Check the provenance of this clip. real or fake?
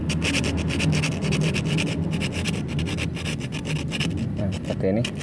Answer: real